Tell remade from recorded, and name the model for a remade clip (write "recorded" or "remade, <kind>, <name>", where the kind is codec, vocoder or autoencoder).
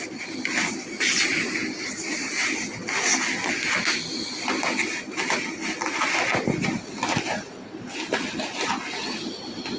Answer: recorded